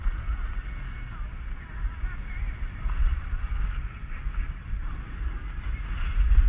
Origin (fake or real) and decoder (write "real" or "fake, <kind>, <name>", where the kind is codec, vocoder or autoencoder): real